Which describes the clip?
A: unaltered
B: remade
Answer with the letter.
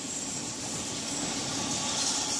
A